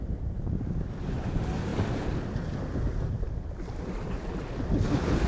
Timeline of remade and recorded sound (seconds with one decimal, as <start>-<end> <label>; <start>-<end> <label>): 0.0-5.3 recorded

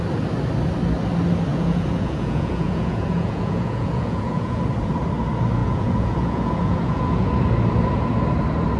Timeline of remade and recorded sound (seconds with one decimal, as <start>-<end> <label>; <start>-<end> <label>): 0.0-1.5 recorded; 1.5-4.6 remade; 4.6-5.6 recorded; 5.6-7.3 remade; 7.3-8.8 recorded

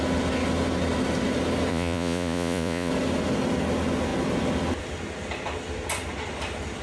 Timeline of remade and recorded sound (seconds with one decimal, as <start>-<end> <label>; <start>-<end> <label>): 0.0-1.7 recorded; 1.7-2.9 remade; 2.9-6.8 recorded

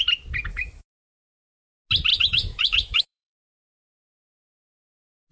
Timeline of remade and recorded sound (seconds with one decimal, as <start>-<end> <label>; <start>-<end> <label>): 0.0-0.5 recorded; 0.5-1.4 remade; 1.4-2.1 recorded; 2.1-4.7 remade; 4.7-5.3 recorded

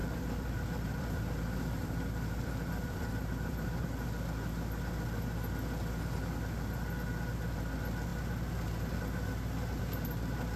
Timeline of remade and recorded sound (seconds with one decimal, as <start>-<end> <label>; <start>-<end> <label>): 0.0-3.8 remade; 3.8-10.6 recorded

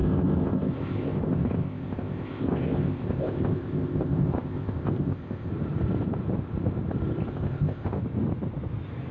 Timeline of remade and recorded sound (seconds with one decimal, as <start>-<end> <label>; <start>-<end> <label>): 0.0-5.5 remade; 5.5-7.3 recorded; 7.3-8.0 remade; 8.0-9.1 recorded